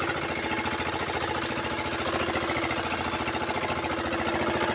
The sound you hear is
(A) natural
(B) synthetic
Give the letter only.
A